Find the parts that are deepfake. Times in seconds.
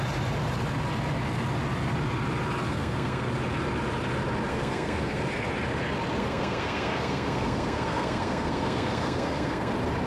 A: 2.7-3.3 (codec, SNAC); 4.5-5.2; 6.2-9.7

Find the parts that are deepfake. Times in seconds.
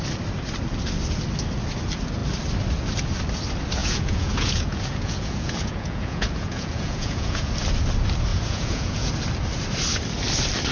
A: 3.8-7.5 (vocoder, Vocos); 8.3-9.1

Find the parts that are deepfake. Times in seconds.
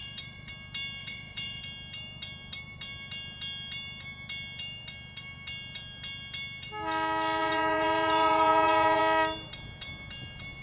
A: 0.0-0.5 (vocoder, Vocos); 1.0-1.6; 7.4-9.0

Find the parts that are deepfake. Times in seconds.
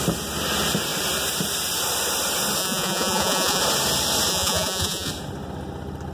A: 2.6-3.6 (vocoder, Vocos); 4.3-5.1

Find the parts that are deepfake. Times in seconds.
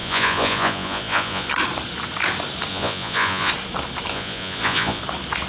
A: 0.0-1.5 (vocoder, Vocos); 2.7-3.5; 4.1-5.0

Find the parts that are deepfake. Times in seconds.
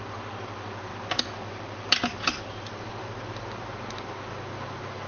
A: none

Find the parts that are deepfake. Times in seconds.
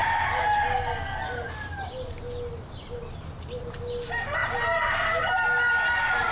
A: none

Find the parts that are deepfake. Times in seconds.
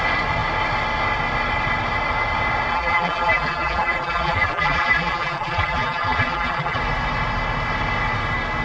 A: 2.7-6.8 (vocoder, BigVGAN v2)